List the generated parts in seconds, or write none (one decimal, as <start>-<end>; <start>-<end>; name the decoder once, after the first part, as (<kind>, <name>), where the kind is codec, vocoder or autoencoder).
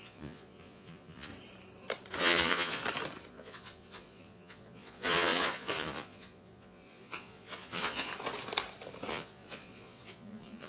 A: 0.0-1.3 (vocoder, Vocos); 2.2-2.8; 3.3-8.1; 9.1-10.7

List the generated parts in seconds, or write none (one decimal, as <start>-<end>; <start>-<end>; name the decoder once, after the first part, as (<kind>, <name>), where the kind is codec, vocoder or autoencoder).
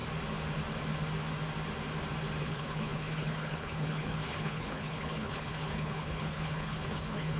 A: 2.4-7.4 (codec, HILCodec)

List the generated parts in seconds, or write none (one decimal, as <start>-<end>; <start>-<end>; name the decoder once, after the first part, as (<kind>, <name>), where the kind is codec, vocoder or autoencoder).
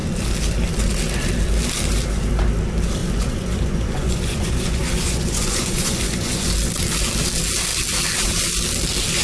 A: 3.0-6.5 (vocoder, Vocos)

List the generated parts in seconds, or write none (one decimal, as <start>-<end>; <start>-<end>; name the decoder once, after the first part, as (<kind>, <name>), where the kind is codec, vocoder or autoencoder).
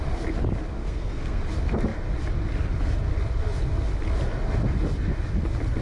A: 0.8-1.4 (codec, SNAC)